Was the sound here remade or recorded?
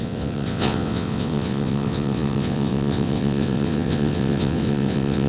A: remade